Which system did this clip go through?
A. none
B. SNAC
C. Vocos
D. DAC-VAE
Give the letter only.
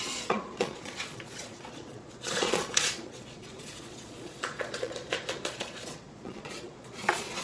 C